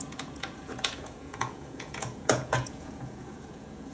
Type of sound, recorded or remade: remade